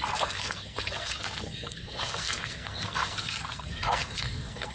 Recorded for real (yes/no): no